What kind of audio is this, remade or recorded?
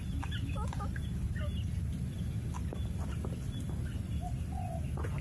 recorded